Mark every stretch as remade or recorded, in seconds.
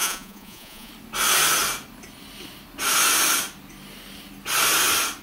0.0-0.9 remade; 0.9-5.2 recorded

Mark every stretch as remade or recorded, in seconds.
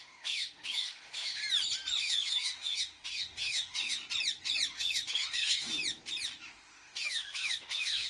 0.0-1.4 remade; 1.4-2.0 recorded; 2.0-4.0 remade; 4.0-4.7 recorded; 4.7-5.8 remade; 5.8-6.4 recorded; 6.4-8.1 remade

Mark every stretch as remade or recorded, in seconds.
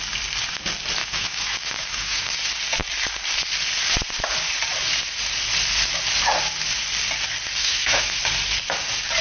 0.0-1.0 recorded; 1.0-2.3 remade; 2.3-7.6 recorded; 7.6-8.2 remade; 8.2-9.2 recorded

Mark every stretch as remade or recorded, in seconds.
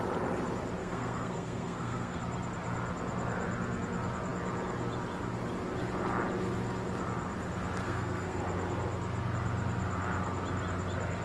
0.0-0.8 recorded; 0.8-2.2 remade; 2.2-7.8 recorded; 7.8-8.4 remade; 8.4-11.2 recorded